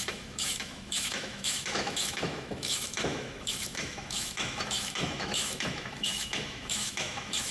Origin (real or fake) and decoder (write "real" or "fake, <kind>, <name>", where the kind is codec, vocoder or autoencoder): fake, autoencoder, DAC-VAE